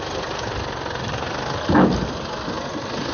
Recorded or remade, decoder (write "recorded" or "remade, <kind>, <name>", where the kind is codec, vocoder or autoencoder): recorded